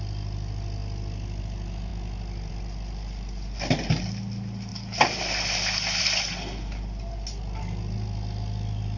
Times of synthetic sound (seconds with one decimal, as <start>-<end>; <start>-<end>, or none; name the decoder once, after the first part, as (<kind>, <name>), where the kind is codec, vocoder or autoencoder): none